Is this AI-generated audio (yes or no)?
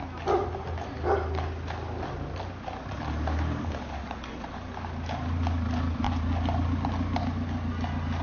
no